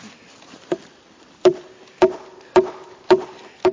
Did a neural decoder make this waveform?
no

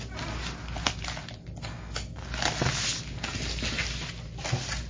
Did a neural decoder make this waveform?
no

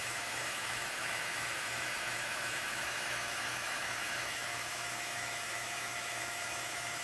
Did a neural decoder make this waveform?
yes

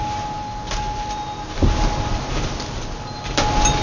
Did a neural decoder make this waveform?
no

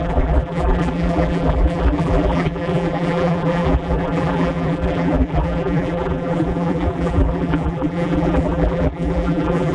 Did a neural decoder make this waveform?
yes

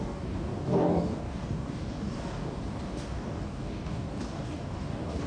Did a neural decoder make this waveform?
yes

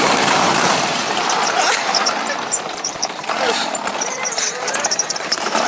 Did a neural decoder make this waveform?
yes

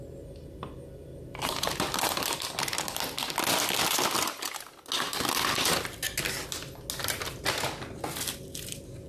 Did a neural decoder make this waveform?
no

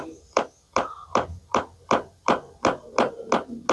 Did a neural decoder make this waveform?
no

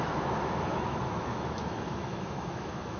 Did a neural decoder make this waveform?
yes